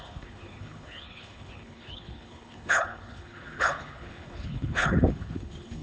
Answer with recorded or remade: remade